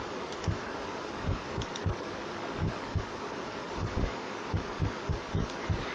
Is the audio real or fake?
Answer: fake